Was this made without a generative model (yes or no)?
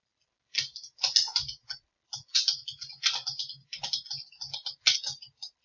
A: yes